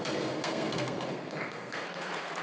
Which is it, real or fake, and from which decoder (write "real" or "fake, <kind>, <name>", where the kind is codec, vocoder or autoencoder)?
fake, codec, SNAC